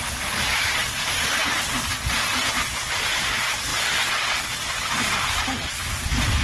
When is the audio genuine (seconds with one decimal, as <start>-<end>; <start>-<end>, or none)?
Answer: 0.0-6.4